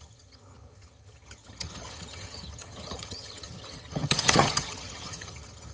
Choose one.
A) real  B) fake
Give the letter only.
B